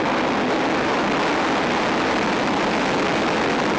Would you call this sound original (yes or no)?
yes